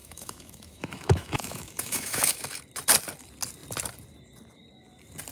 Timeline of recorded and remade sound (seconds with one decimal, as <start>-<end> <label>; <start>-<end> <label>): 0.0-2.6 remade; 2.6-5.3 recorded